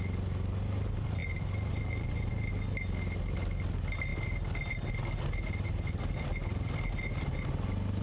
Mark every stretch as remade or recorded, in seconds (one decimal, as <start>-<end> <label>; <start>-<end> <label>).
0.0-1.2 recorded; 1.2-2.3 remade; 2.3-8.0 recorded